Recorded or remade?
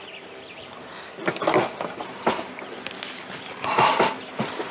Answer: recorded